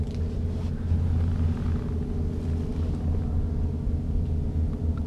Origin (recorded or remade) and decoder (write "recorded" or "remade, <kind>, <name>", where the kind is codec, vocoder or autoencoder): recorded